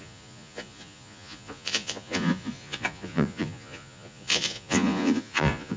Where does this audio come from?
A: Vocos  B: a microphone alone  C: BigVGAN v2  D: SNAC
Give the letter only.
A